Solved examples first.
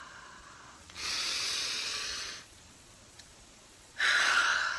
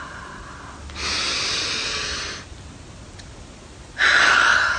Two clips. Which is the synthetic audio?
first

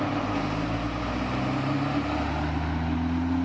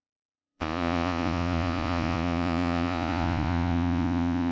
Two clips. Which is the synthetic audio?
second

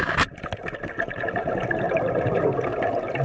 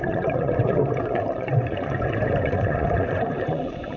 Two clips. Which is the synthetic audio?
second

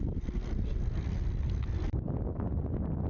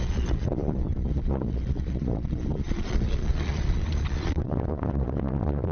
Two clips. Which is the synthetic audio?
second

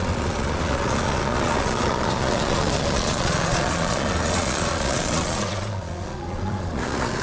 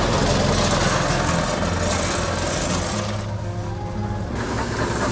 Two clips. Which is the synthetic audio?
first